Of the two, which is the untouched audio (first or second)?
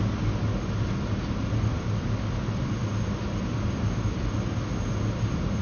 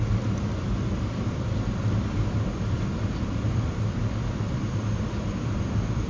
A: first